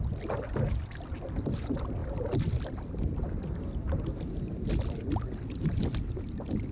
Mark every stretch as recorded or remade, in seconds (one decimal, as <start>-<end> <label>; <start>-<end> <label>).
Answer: 0.0-6.7 recorded